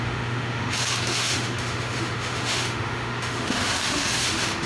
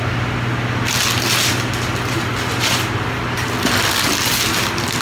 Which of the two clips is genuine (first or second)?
second